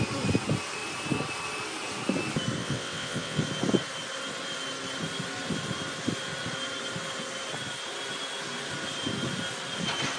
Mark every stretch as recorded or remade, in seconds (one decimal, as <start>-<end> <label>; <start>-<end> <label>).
0.0-2.6 recorded; 2.6-3.4 remade; 3.4-10.2 recorded